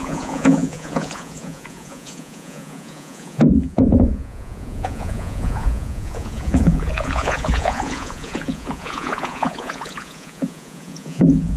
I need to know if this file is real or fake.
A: fake